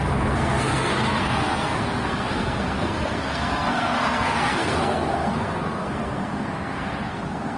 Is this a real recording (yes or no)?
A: no